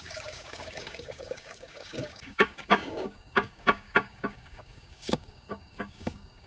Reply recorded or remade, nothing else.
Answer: remade